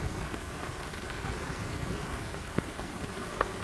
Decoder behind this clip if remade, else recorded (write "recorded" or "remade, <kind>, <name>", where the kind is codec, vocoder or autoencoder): remade, codec, SNAC